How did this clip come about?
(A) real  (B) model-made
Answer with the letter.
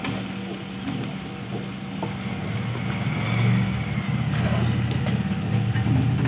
A